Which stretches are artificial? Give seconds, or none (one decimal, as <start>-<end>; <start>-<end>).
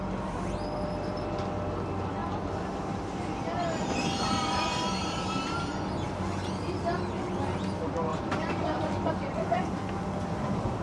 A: 2.2-5.7; 8.1-9.1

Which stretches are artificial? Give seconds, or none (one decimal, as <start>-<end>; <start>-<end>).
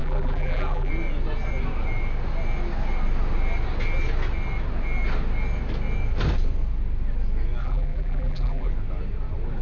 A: 0.0-0.9; 7.6-8.7